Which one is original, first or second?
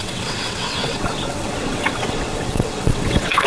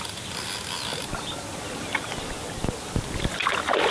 second